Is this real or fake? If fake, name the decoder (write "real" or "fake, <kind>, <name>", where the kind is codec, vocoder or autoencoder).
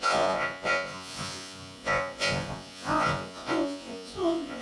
fake, vocoder, Vocos